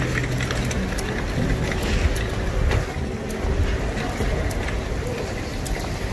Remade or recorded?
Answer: recorded